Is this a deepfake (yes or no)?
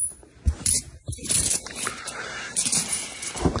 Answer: yes